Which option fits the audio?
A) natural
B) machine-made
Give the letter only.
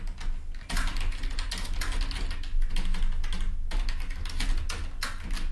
A